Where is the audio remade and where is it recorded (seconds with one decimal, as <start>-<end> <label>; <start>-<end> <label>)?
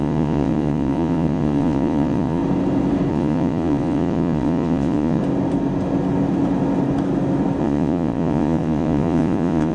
0.0-2.4 remade; 2.4-3.1 recorded; 3.1-5.2 remade; 5.2-7.6 recorded; 7.6-9.7 remade